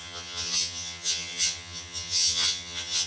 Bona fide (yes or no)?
no